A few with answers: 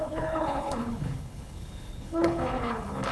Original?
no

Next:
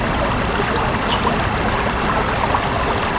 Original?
yes